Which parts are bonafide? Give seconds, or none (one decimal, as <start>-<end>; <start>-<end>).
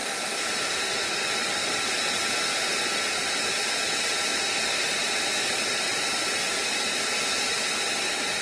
0.0-8.4